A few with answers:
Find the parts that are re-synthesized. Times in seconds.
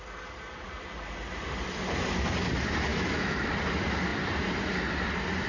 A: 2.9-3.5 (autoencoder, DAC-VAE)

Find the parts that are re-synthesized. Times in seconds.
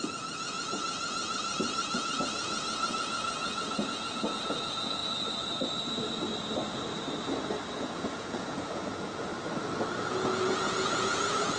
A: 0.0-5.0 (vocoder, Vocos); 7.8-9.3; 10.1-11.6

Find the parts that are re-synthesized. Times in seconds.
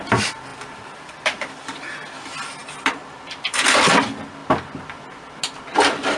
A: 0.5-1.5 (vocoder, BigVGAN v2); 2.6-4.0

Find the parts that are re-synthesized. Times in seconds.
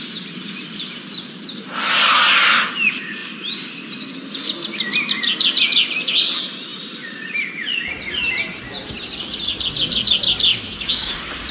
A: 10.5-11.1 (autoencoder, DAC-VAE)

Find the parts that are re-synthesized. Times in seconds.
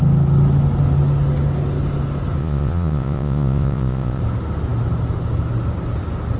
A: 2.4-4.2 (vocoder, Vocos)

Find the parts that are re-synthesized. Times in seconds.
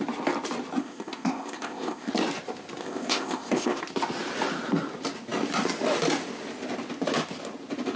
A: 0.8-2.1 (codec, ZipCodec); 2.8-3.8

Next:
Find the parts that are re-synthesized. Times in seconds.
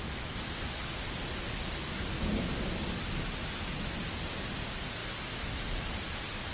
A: none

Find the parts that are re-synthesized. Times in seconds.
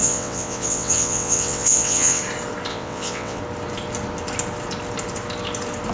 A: 0.0-2.2 (vocoder, WaveNeXt); 2.7-3.4